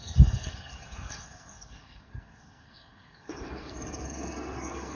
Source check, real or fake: fake